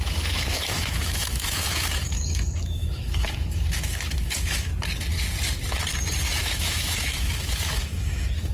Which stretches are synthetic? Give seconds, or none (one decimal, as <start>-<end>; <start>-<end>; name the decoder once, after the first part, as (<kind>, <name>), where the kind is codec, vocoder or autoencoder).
0.0-4.7 (autoencoder, DAC-VAE); 6.4-8.5